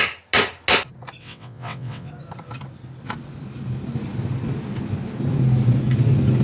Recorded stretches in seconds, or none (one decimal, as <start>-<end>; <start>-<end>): 0.0-1.2; 2.1-6.4